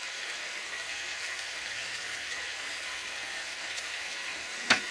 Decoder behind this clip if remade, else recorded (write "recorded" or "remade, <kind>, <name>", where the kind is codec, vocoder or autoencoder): remade, codec, SNAC